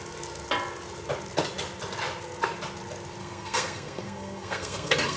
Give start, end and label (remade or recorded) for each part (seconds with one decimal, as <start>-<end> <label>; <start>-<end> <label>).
0.0-3.2 recorded; 3.2-5.2 remade